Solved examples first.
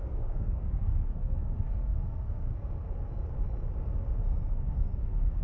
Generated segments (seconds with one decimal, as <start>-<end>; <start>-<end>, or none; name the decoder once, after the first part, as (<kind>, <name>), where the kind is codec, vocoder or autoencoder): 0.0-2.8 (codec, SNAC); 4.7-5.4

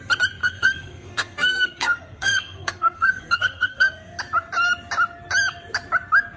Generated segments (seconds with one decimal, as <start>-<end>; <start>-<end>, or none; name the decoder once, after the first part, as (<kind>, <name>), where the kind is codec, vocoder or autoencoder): 0.4-4.2 (codec, SNAC)

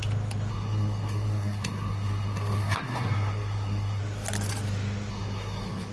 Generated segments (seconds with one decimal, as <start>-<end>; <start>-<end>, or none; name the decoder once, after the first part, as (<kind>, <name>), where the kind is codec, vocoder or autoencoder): 0.5-4.0 (codec, SNAC); 5.1-5.9